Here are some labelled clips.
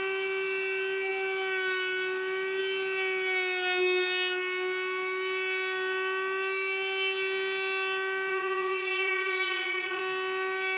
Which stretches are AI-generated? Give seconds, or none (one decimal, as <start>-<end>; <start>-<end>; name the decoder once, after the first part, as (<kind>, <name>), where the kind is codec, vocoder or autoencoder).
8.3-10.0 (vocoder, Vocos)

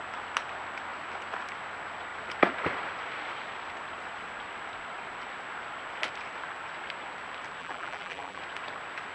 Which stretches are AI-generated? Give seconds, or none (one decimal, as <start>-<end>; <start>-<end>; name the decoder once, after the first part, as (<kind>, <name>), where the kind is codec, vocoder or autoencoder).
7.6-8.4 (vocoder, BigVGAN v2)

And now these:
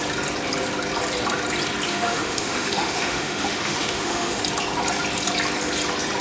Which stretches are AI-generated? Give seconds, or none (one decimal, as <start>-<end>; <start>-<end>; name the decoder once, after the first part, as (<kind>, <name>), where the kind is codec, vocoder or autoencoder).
1.9-4.4 (autoencoder, DAC-VAE)

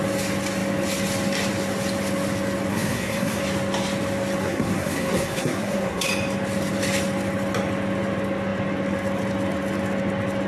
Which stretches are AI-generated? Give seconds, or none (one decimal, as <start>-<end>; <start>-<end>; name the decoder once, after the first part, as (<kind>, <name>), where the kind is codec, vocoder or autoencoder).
2.7-3.4 (codec, SNAC); 4.4-6.1

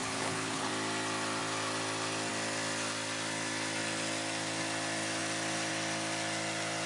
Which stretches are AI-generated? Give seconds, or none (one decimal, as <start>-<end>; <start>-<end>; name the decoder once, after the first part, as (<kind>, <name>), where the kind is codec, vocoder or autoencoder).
0.0-0.7 (codec, HILCodec)

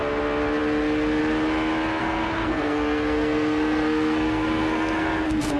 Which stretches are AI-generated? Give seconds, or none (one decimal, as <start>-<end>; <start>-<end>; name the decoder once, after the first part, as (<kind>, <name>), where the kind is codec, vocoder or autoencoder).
2.0-5.6 (codec, SNAC)

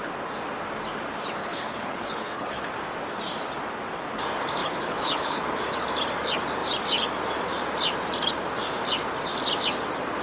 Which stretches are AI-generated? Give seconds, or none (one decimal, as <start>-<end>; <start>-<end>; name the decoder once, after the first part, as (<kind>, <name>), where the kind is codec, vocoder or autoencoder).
1.4-2.6 (codec, HILCodec); 4.6-5.4

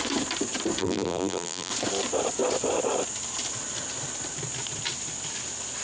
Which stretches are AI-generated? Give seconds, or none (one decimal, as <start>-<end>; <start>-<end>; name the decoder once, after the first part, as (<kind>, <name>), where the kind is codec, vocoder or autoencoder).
0.8-1.7 (vocoder, BigVGAN v2)